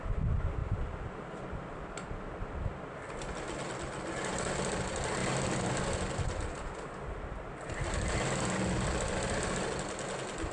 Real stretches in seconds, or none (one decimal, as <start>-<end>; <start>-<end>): 0.0-10.5